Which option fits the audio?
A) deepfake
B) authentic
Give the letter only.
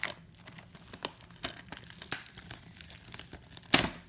B